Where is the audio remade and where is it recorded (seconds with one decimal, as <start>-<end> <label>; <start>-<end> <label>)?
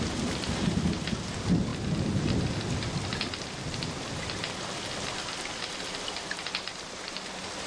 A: 0.0-7.7 recorded